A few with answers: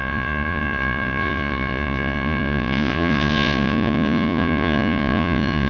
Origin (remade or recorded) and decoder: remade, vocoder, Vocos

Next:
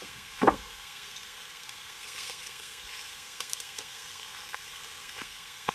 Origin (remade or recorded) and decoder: remade, codec, SNAC